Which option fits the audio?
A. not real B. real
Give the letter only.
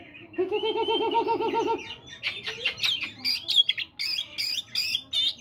B